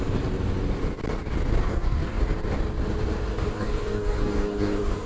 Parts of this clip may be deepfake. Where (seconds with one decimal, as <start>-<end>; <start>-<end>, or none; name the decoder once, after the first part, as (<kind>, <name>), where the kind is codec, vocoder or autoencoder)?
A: 1.6-2.2 (codec, DAC); 3.3-5.1